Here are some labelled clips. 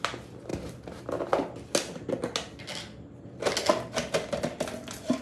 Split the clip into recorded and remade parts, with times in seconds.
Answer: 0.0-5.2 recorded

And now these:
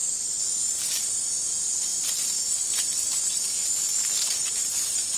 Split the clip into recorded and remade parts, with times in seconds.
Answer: 0.0-0.6 recorded; 0.6-1.9 remade; 1.9-5.2 recorded

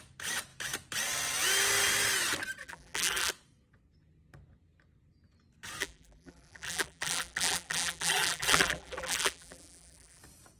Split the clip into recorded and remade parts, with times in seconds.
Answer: 0.0-2.6 recorded; 2.6-3.3 remade; 3.3-5.8 recorded; 5.8-10.2 remade; 10.2-10.6 recorded

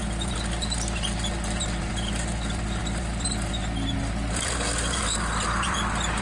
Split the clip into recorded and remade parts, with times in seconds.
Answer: 0.0-2.8 recorded; 2.8-6.2 remade

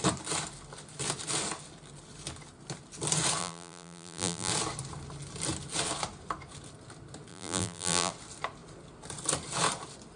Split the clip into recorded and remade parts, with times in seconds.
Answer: 0.0-3.4 recorded; 3.4-4.5 remade; 4.5-7.3 recorded; 7.3-8.1 remade; 8.1-10.2 recorded

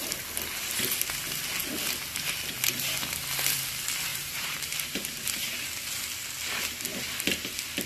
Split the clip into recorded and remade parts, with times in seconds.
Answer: 0.0-4.1 recorded; 4.1-5.1 remade; 5.1-7.9 recorded